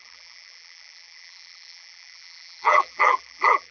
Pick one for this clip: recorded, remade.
remade